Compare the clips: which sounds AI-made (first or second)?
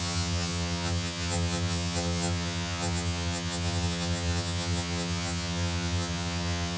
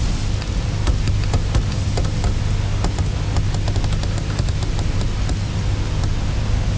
first